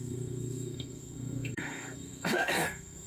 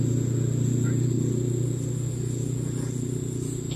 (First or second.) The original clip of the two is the second